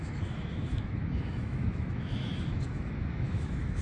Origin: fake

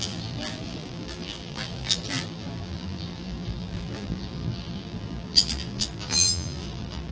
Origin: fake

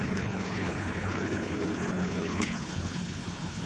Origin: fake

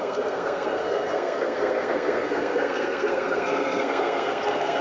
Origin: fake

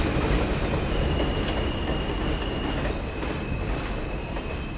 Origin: real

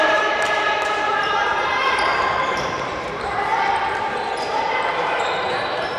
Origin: fake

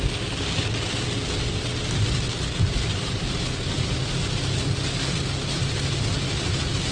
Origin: real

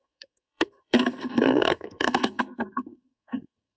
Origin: fake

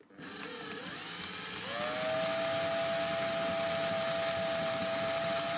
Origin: real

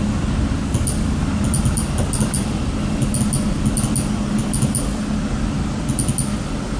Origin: real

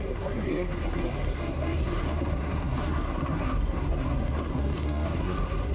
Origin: fake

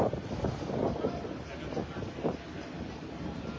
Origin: real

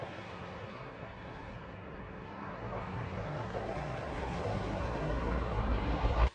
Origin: fake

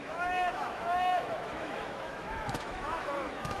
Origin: fake